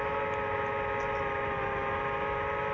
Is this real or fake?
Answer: real